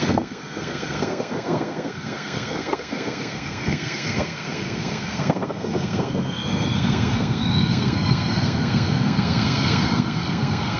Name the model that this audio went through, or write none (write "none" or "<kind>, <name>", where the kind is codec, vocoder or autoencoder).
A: codec, SNAC